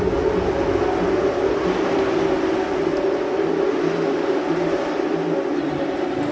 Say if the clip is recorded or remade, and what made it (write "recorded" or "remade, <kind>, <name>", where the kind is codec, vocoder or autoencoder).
recorded